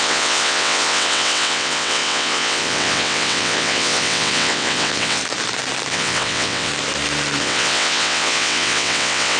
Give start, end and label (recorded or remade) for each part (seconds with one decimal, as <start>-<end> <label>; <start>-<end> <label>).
0.0-5.2 remade; 5.2-5.9 recorded; 5.9-6.7 remade; 6.7-7.4 recorded; 7.4-9.4 remade